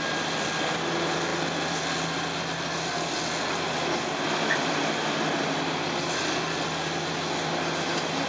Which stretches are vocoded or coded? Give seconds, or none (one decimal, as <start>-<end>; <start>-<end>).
none